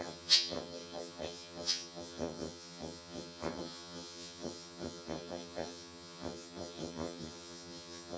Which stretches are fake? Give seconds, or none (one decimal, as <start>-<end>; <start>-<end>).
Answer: 0.0-8.2